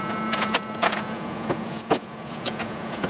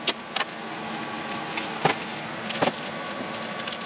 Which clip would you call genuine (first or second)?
second